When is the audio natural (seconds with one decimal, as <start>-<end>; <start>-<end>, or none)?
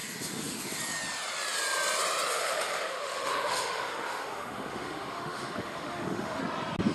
0.8-2.3; 6.4-6.9